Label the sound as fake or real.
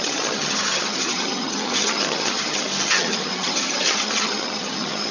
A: fake